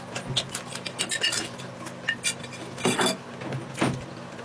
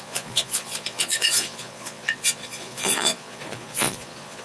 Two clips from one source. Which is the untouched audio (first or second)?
first